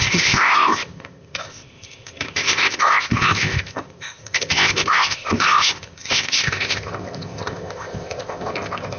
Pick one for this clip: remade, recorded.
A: remade